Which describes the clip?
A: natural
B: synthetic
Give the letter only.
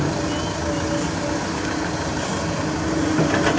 A